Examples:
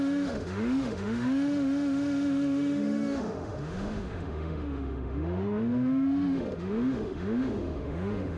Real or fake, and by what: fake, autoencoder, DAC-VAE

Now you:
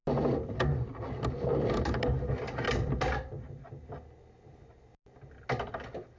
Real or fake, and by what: real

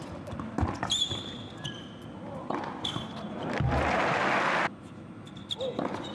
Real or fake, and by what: real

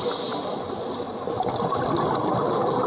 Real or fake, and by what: real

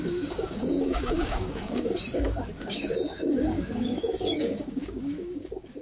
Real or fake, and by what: fake, codec, DAC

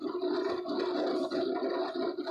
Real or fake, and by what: real